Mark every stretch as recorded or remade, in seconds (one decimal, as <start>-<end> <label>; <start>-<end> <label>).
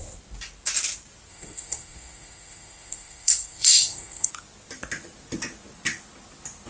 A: 0.0-1.3 recorded; 1.3-4.3 remade; 4.3-6.7 recorded